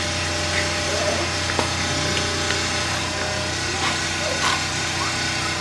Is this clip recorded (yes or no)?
yes